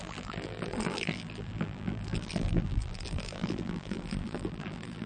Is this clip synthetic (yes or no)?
yes